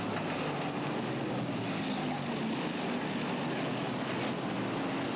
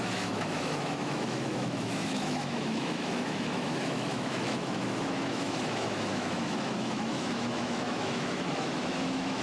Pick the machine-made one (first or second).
second